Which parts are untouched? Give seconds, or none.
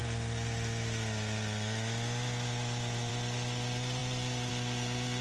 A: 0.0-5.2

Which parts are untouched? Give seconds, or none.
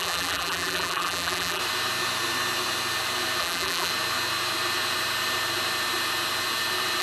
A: 1.6-3.4; 3.9-7.0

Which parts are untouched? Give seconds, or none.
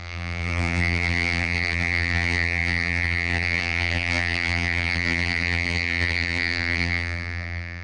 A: none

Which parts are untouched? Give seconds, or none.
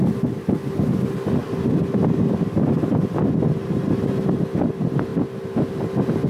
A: 0.0-6.3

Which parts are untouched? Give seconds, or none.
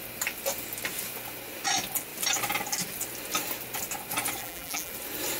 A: 0.0-4.4; 4.9-5.4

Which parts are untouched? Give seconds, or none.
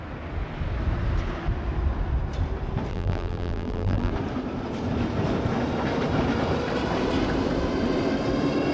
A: 0.0-2.9; 4.1-8.7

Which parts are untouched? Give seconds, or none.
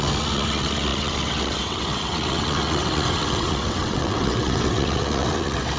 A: none